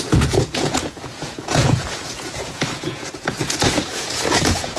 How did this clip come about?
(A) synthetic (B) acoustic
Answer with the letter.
A